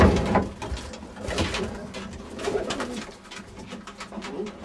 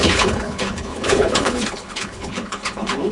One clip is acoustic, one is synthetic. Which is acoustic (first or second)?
first